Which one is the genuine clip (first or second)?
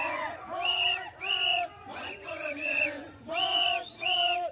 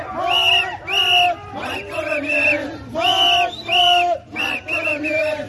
second